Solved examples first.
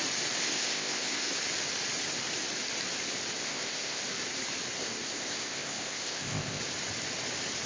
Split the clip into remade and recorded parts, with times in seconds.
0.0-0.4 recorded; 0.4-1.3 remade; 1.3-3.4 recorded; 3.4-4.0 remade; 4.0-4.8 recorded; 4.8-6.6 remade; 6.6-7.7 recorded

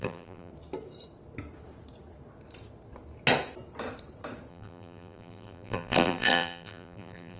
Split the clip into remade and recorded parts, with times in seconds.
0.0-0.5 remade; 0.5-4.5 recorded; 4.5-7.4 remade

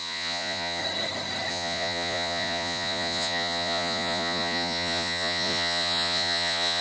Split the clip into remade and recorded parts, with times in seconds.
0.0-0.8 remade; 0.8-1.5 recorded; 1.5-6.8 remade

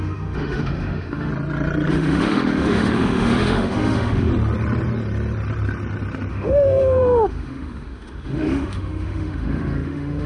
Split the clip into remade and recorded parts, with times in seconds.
0.0-1.3 remade; 1.3-1.9 recorded; 1.9-4.3 remade; 4.3-6.3 recorded; 6.3-10.3 remade